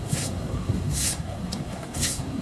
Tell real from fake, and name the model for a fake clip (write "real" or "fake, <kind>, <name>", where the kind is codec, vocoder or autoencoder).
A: fake, codec, SNAC